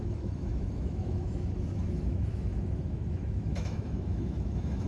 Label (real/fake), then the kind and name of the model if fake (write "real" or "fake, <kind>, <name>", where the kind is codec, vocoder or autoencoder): fake, autoencoder, DAC-VAE